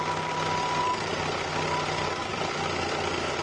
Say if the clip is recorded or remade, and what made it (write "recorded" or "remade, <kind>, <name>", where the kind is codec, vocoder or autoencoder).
recorded